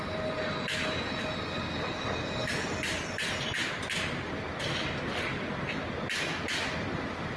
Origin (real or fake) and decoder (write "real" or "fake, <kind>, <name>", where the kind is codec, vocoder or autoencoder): real